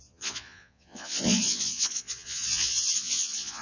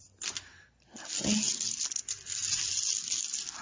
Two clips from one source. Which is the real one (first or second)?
second